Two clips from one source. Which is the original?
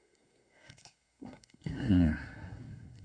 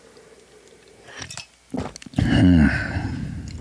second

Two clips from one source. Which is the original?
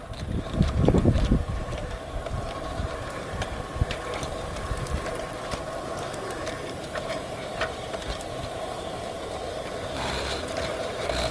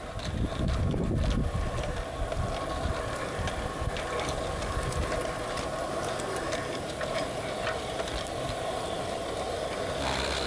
second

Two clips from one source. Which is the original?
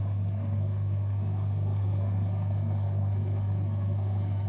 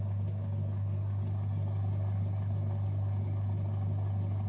second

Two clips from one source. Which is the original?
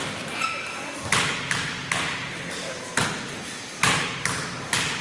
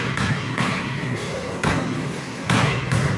first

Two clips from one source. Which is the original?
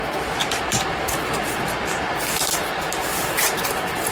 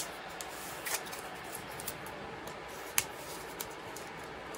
second